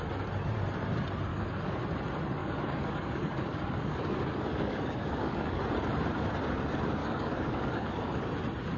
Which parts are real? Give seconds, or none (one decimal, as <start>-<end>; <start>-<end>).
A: 0.0-1.3; 1.8-2.4; 5.6-7.0; 8.2-8.8